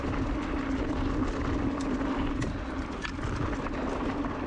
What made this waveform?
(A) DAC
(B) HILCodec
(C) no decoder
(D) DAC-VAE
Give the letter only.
C